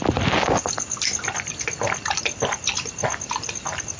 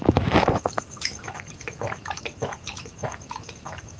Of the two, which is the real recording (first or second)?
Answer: first